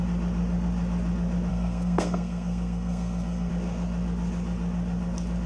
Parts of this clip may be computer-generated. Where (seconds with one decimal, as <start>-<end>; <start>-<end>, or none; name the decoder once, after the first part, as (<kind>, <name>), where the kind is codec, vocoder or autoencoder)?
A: 1.5-3.5 (codec, SNAC)